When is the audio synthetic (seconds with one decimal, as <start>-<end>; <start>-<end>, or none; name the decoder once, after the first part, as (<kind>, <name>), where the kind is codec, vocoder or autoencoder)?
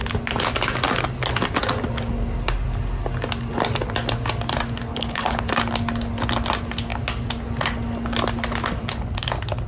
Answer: 4.9-5.5 (codec, HILCodec)